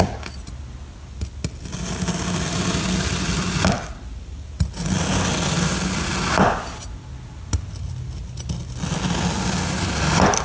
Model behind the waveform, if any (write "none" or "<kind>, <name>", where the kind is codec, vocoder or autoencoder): none